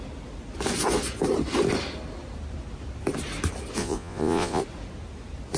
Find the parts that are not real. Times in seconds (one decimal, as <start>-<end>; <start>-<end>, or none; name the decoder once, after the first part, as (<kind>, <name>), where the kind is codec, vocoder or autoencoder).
3.8-4.6 (vocoder, Vocos)